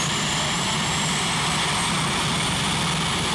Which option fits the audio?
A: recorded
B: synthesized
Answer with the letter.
A